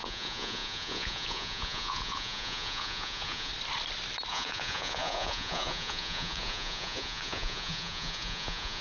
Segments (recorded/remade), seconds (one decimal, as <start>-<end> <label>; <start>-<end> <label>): 0.0-3.5 remade; 3.5-4.3 recorded; 4.3-8.8 remade